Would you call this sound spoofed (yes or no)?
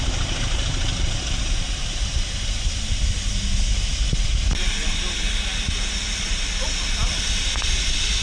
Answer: no